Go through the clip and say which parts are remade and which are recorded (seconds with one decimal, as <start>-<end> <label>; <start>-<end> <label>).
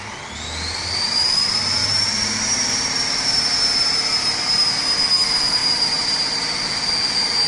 0.0-7.5 recorded